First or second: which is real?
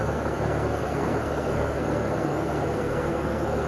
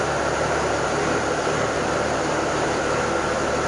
second